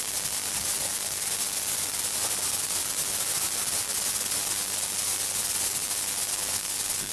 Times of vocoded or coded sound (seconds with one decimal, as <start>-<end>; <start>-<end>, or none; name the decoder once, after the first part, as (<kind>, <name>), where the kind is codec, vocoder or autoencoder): none